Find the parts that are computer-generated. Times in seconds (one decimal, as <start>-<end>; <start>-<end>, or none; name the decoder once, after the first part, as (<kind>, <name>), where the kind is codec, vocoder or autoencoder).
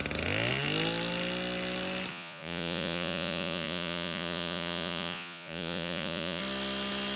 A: 2.1-6.4 (vocoder, Vocos)